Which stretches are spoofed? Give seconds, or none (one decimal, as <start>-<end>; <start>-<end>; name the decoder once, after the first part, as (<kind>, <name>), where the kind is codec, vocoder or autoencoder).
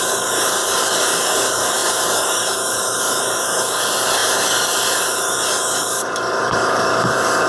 0.0-7.5 (codec, DAC)